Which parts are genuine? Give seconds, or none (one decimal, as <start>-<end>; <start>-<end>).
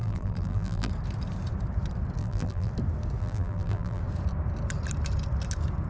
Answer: 0.9-2.2; 2.7-3.2; 4.0-5.9